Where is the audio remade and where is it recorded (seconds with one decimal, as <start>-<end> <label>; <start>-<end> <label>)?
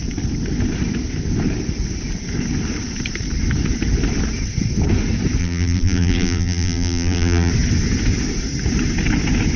0.0-5.4 recorded; 5.4-7.5 remade; 7.5-9.6 recorded